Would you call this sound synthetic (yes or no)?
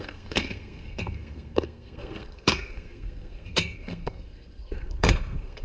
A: yes